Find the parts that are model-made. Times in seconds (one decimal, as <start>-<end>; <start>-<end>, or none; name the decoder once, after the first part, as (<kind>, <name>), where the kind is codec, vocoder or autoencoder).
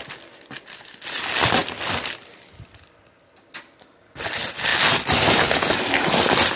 none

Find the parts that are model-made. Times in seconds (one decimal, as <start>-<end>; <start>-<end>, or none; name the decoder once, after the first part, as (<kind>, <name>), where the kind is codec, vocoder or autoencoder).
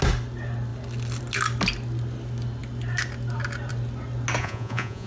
4.4-5.1 (vocoder, Vocos)